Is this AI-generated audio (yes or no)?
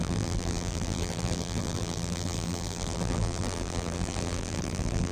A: yes